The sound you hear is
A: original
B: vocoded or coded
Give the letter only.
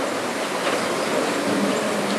A